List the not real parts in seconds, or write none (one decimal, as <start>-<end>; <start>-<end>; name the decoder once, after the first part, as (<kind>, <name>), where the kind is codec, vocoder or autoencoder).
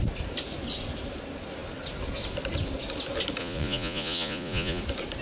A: 3.4-4.8 (vocoder, Vocos)